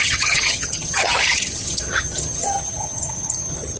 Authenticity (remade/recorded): remade